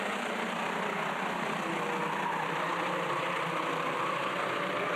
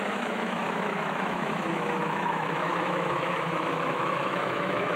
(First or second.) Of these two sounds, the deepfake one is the second